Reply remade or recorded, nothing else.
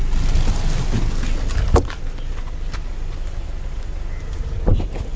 recorded